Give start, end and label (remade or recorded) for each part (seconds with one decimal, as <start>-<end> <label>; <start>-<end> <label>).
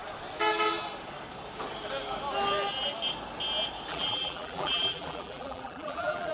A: 0.0-3.9 recorded; 3.9-6.3 remade